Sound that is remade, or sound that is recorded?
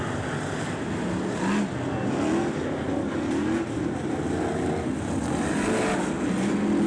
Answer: recorded